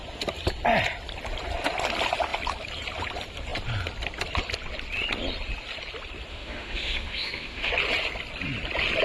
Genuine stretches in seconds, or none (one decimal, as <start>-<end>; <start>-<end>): 0.0-6.3; 7.7-9.0